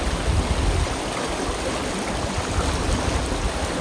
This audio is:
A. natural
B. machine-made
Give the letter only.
A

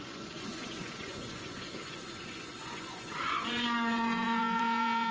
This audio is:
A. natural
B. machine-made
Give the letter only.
B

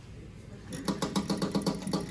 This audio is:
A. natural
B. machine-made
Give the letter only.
A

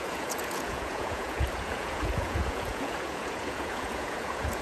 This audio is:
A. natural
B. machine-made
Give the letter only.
B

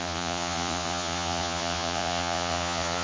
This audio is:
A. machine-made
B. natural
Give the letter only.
A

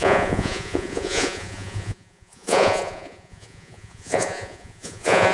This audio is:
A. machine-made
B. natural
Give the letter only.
A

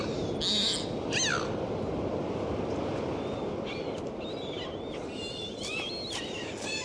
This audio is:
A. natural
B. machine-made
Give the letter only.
A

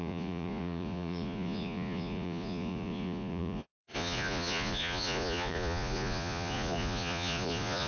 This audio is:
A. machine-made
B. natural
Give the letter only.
A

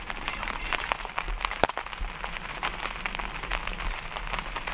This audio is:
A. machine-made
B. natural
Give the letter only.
B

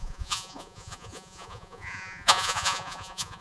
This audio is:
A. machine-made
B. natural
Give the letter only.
A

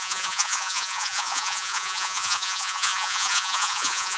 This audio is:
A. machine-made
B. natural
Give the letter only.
A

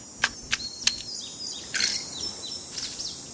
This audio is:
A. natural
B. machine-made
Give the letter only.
A